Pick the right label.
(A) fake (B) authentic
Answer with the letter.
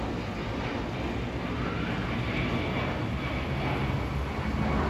B